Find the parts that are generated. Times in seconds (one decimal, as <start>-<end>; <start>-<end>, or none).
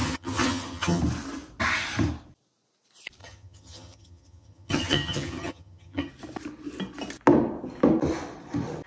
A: 0.0-1.0; 3.2-6.1